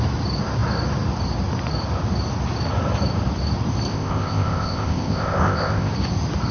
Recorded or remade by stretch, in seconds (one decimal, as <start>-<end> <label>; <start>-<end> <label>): 0.0-3.9 recorded; 3.9-5.9 remade; 5.9-6.5 recorded

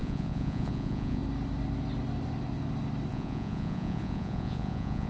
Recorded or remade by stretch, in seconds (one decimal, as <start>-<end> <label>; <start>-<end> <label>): 0.0-1.2 remade; 1.2-3.1 recorded; 3.1-5.1 remade

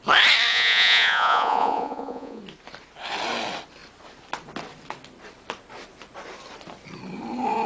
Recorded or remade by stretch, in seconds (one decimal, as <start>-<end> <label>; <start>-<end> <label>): 0.0-0.5 recorded; 0.5-2.4 remade; 2.4-7.7 recorded

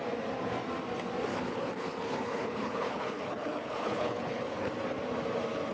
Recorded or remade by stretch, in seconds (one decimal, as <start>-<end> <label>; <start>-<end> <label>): 0.0-1.3 recorded; 1.3-4.7 remade; 4.7-5.7 recorded

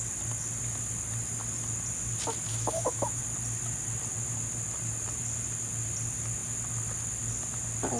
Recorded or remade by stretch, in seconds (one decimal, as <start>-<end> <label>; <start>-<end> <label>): 0.0-2.5 recorded; 2.5-3.2 remade; 3.2-8.0 recorded